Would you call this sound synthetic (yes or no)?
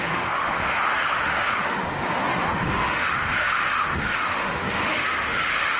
yes